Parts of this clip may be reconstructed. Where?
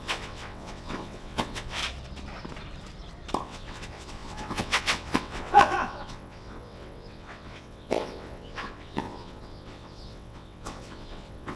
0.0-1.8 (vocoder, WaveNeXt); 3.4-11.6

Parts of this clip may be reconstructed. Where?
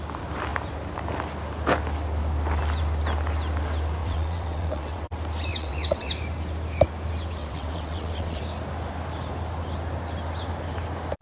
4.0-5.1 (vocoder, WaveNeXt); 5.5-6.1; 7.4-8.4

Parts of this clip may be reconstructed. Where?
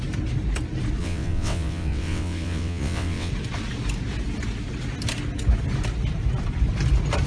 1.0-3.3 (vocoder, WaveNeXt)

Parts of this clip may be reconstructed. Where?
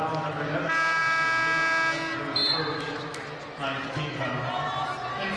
none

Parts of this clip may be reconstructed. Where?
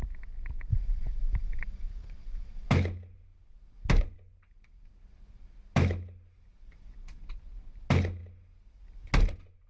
0.7-2.7 (vocoder, WaveNeXt)